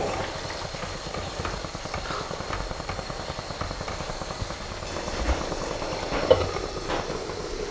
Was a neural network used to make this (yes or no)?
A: no